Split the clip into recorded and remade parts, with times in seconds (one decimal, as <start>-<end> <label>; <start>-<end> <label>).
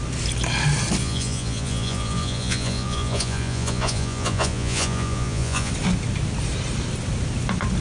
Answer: 0.0-1.0 recorded; 1.0-5.7 remade; 5.7-7.8 recorded